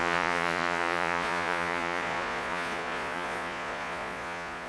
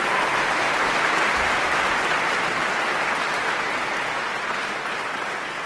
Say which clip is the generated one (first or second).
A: first